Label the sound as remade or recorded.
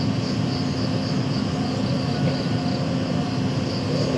recorded